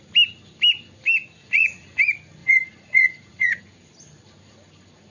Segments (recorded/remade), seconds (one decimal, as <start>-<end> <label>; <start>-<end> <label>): 0.0-1.4 recorded; 1.4-2.0 remade; 2.0-2.4 recorded; 2.4-3.6 remade; 3.6-5.1 recorded